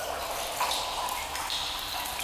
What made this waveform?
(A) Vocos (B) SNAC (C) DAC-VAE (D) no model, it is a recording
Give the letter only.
D